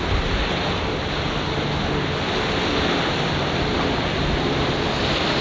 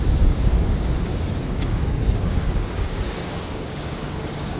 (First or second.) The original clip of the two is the first